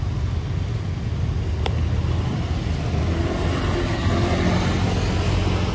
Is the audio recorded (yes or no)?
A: yes